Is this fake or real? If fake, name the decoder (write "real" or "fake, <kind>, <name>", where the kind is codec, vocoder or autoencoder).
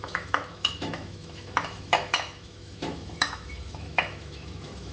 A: fake, autoencoder, DAC-VAE